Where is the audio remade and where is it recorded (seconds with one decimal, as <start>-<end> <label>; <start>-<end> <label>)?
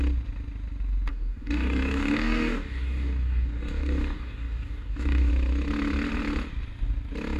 0.0-1.1 recorded; 1.1-5.3 remade; 5.3-7.4 recorded